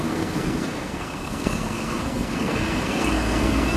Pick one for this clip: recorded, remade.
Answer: remade